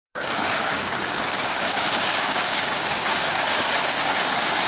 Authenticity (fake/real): fake